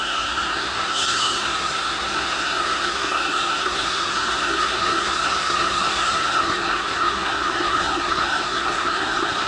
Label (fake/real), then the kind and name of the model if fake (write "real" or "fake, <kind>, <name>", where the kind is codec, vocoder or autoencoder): fake, codec, SNAC